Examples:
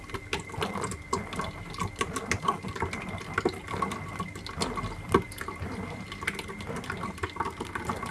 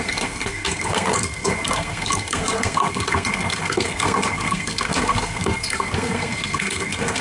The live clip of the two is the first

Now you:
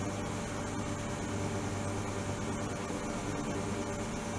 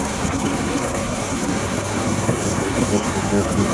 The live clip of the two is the first